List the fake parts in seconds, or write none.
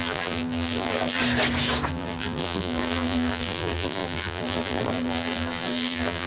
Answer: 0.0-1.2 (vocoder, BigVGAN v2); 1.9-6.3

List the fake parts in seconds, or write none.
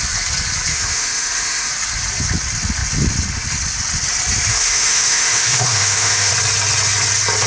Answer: 0.7-1.7 (autoencoder, DAC-VAE); 4.5-6.3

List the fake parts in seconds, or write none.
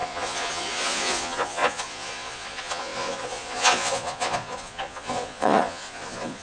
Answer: 0.0-6.4 (vocoder, Vocos)